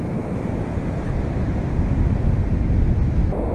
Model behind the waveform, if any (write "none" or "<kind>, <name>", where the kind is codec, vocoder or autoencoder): none